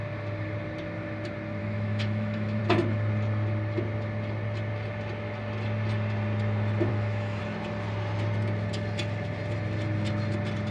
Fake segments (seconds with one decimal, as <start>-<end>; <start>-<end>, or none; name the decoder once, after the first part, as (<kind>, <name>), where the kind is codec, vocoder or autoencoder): 1.6-2.6 (autoencoder, DAC-VAE); 6.9-7.4

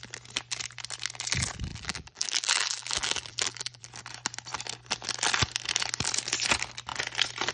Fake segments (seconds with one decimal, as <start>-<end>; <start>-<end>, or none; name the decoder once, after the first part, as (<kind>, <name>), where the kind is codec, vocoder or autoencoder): 1.7-3.8 (vocoder, BigVGAN v2)

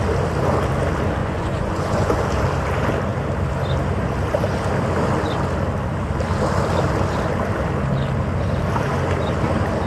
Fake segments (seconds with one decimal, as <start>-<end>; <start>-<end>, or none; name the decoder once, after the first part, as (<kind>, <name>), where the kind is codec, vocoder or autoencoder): 1.2-2.2 (vocoder, Vocos)

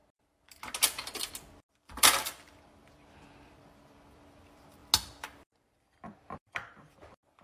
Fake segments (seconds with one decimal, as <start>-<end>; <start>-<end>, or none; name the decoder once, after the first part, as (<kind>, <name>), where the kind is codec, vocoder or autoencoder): 1.7-4.8 (vocoder, BigVGAN v2); 5.7-7.4

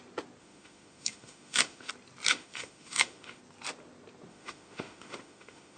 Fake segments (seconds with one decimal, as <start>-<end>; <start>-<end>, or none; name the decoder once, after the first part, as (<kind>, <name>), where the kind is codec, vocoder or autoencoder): 0.4-1.9 (autoencoder, DAC-VAE); 2.3-3.4; 4.3-5.8